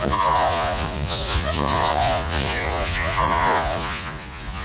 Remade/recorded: remade